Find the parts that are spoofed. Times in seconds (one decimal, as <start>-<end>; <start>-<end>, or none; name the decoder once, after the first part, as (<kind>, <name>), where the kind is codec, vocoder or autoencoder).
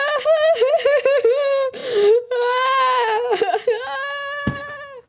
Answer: none